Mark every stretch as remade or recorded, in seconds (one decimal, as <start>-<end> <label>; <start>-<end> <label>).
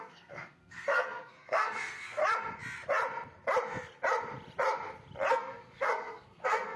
0.0-2.2 remade; 2.2-5.3 recorded; 5.3-6.8 remade